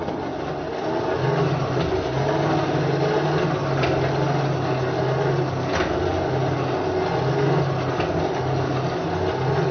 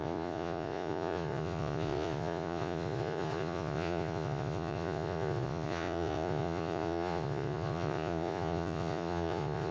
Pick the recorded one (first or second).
first